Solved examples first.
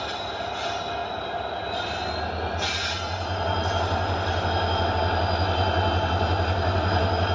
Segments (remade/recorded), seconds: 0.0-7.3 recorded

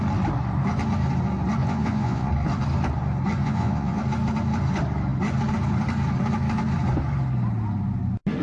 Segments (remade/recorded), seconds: 0.0-1.6 recorded; 1.6-2.3 remade; 2.3-3.4 recorded; 3.4-4.0 remade; 4.0-8.4 recorded

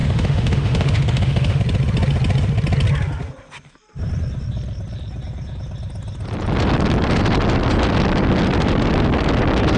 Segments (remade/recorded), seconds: 0.0-1.6 remade; 1.6-9.8 recorded

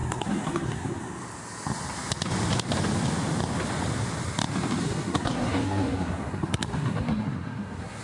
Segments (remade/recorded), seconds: 0.0-1.0 remade; 1.0-4.8 recorded; 4.8-8.0 remade

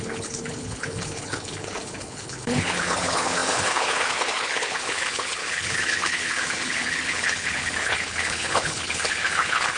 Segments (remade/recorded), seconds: 0.0-9.8 remade